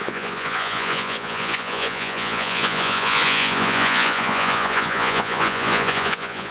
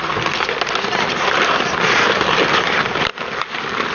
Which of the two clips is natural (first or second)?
second